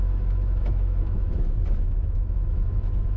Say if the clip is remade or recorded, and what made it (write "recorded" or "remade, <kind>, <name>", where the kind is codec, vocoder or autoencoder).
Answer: remade, autoencoder, DAC-VAE